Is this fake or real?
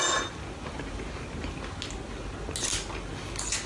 real